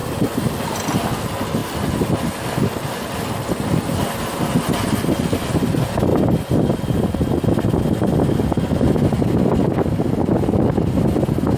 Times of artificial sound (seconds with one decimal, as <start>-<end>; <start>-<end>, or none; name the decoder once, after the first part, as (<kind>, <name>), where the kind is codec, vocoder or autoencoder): none